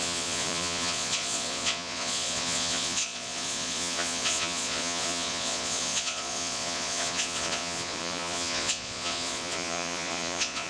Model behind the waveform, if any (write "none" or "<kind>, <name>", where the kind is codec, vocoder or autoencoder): vocoder, Vocos